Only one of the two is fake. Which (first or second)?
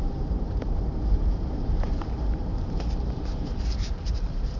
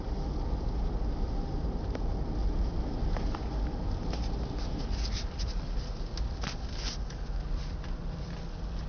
first